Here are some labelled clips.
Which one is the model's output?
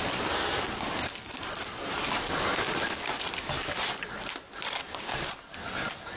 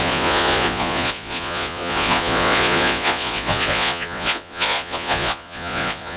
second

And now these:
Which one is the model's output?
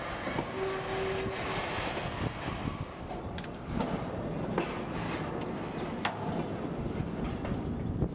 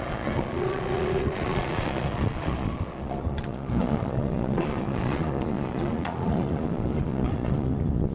second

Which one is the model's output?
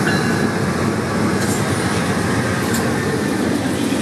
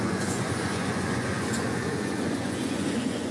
second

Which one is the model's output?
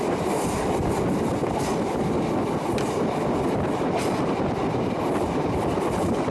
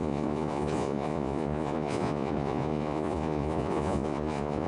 second